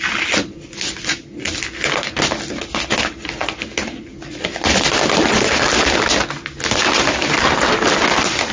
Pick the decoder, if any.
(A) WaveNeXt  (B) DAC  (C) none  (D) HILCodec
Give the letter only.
C